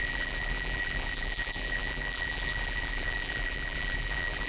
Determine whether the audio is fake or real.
fake